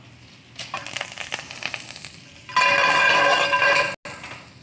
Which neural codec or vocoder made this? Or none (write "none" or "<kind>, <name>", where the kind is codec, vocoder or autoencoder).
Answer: none